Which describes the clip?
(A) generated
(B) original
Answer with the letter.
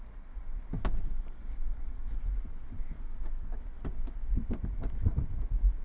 B